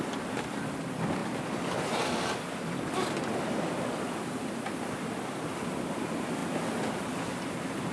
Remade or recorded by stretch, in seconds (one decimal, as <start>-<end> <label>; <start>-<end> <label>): 0.0-7.9 recorded